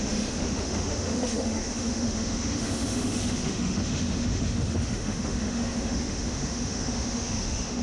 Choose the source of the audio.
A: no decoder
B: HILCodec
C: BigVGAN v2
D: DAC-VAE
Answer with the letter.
D